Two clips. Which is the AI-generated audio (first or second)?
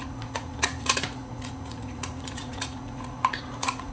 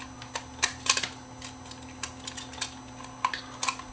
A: first